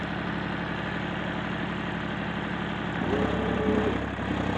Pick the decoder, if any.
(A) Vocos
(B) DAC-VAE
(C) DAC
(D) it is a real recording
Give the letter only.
D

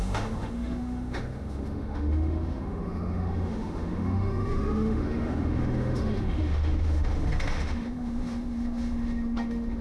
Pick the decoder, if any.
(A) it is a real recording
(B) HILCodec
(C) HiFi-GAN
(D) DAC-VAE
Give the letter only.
D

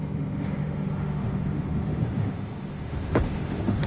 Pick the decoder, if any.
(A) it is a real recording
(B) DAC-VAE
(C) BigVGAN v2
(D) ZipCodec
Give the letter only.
B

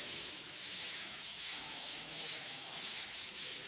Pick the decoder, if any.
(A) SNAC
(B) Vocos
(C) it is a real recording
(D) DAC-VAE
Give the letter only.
D